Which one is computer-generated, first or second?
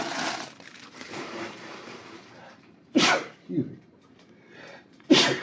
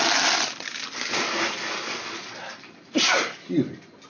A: first